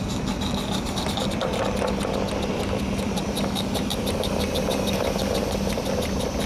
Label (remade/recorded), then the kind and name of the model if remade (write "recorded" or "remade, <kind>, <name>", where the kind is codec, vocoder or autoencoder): recorded